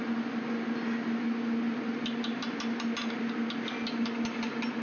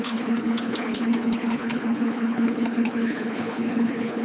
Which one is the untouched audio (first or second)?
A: first